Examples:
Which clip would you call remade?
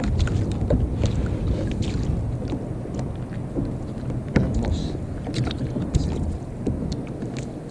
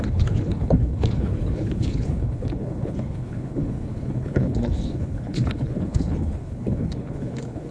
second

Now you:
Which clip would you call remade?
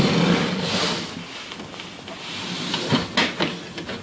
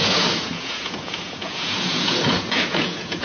second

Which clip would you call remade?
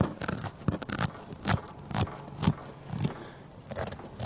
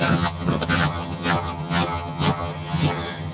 second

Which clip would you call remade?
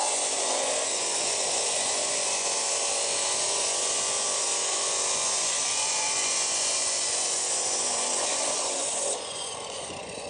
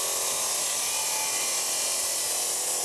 first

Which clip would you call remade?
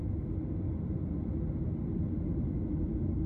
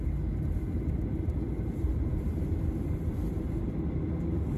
second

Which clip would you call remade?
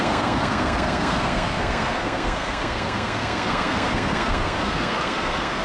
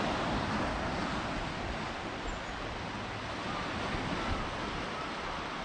first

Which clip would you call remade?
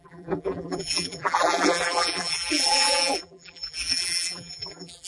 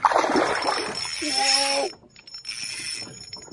first